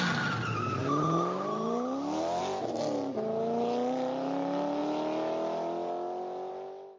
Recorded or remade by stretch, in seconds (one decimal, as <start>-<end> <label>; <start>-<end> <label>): 0.0-7.0 recorded

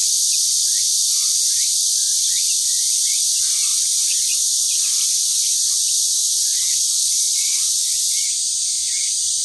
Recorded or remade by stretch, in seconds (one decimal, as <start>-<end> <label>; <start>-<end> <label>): 0.0-7.0 recorded; 7.0-7.6 remade; 7.6-9.4 recorded

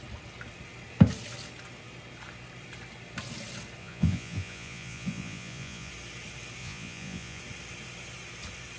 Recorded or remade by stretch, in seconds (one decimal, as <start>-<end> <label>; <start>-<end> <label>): 0.0-3.8 recorded; 3.8-5.9 remade; 5.9-6.6 recorded; 6.6-7.4 remade; 7.4-8.8 recorded

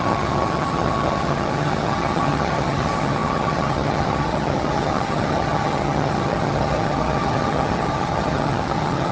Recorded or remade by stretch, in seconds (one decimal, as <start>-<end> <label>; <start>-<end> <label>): 0.0-9.1 remade

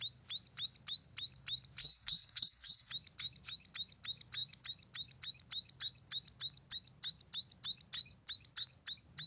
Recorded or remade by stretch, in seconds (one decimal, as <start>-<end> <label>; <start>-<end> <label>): 0.0-1.8 recorded; 1.8-2.9 remade; 2.9-9.3 recorded

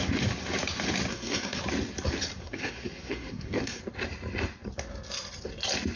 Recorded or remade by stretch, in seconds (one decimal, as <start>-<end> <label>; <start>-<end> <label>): 0.0-1.1 recorded; 1.1-1.6 remade; 1.6-2.4 recorded; 2.4-3.8 remade; 3.8-6.0 recorded

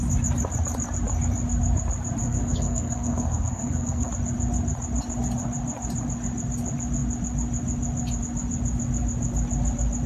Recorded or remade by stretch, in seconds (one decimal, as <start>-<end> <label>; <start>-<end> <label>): 0.0-2.2 recorded; 2.2-4.1 remade; 4.1-10.1 recorded

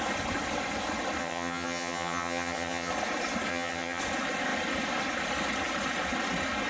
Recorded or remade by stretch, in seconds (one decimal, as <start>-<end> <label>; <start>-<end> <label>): 0.0-1.2 recorded; 1.2-2.9 remade; 2.9-3.5 recorded; 3.5-4.0 remade; 4.0-6.7 recorded